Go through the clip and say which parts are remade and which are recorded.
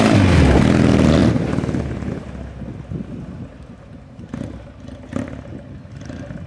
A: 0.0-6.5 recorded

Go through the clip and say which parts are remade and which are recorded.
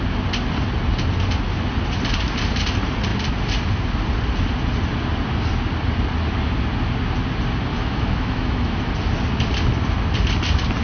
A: 0.0-7.7 recorded; 7.7-8.8 remade; 8.8-10.8 recorded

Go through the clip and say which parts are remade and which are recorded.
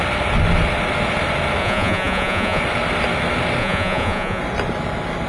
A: 0.0-1.6 recorded; 1.6-2.6 remade; 2.6-3.6 recorded; 3.6-4.4 remade; 4.4-5.3 recorded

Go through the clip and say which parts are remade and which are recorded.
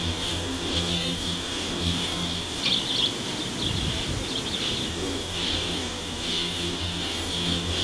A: 0.0-2.6 remade; 2.6-4.9 recorded; 4.9-7.8 remade